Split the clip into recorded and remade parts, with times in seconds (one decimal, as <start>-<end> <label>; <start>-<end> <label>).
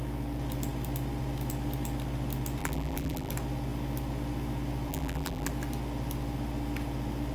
0.0-2.6 recorded; 2.6-3.3 remade; 3.3-4.9 recorded; 4.9-5.5 remade; 5.5-7.3 recorded